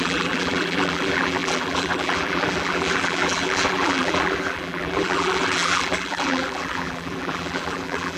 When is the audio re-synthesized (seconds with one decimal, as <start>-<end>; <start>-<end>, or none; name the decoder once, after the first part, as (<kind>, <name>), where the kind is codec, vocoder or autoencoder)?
0.0-8.2 (vocoder, BigVGAN v2)